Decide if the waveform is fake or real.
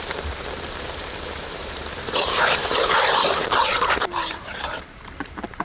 fake